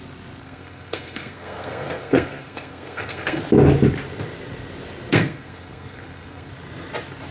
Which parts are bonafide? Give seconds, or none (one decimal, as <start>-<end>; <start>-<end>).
0.0-0.4; 3.4-5.1; 6.5-7.3